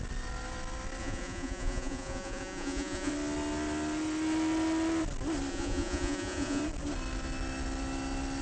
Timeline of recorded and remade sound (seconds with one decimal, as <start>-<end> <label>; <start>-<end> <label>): 0.0-1.0 recorded; 1.0-3.1 remade; 3.1-5.5 recorded; 5.5-6.6 remade; 6.6-8.4 recorded